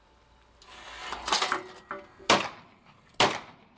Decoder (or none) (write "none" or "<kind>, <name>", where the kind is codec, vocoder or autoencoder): none